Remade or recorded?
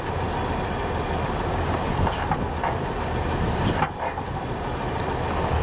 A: recorded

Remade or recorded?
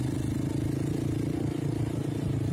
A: recorded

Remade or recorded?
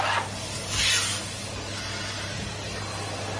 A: recorded